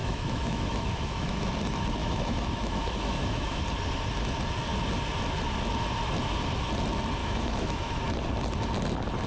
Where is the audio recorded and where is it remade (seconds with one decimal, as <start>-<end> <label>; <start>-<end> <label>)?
0.0-1.5 remade; 1.5-2.0 recorded; 2.0-3.6 remade; 3.6-7.2 recorded; 7.2-8.0 remade; 8.0-9.3 recorded